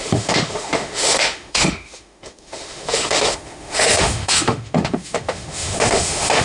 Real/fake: fake